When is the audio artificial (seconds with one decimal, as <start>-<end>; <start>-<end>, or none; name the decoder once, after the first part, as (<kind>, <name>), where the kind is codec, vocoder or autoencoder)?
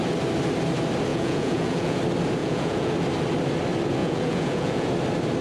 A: 1.1-2.0 (vocoder, Vocos); 2.4-2.9; 4.0-4.9